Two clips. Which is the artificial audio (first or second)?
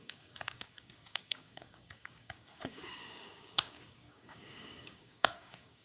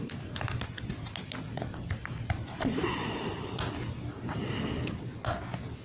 first